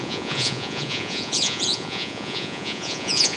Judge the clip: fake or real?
fake